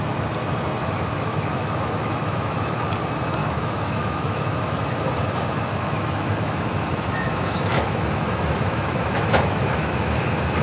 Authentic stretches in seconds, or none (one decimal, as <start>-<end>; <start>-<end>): 0.0-0.8; 2.9-3.4; 5.0-5.7; 10.2-10.6